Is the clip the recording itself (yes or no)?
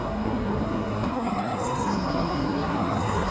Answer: no